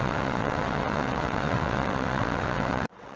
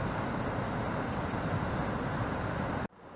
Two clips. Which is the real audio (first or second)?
second